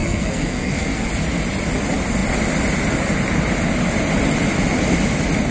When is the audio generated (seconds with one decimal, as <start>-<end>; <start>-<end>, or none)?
0.0-1.1